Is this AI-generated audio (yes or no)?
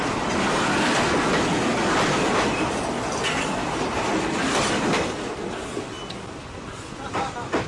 no